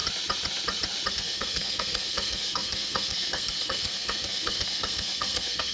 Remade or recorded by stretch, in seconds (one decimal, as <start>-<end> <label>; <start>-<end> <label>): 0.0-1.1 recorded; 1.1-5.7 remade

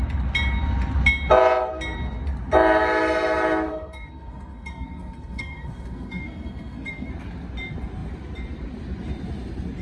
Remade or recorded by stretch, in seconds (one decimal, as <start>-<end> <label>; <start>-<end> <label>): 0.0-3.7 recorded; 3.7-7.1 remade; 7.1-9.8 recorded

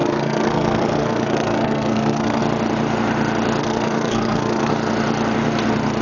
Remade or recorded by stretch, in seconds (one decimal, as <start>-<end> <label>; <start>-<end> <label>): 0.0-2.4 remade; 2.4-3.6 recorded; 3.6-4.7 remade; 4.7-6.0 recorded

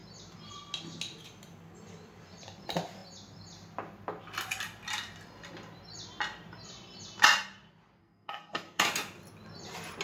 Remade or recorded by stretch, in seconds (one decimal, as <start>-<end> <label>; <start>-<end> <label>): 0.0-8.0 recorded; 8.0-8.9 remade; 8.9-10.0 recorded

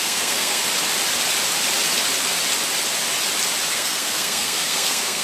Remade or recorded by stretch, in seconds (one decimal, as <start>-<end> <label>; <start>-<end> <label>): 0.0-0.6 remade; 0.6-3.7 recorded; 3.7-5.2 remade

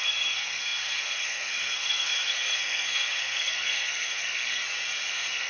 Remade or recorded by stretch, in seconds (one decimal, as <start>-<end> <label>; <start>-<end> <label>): 0.0-4.6 remade; 4.6-5.1 recorded; 5.1-5.5 remade

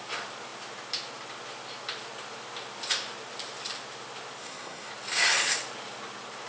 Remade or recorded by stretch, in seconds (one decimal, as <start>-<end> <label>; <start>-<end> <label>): 0.0-4.4 recorded; 4.4-4.9 remade; 4.9-6.5 recorded